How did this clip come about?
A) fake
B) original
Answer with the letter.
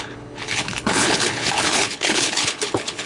A